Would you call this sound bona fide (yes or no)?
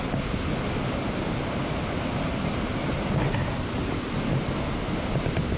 yes